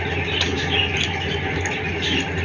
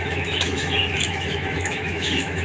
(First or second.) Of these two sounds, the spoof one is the second